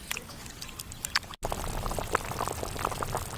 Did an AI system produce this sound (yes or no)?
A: no